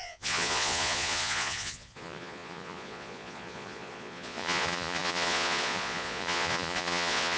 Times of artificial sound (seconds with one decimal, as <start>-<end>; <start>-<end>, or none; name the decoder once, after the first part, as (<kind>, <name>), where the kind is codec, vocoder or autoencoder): 0.0-7.4 (vocoder, Vocos)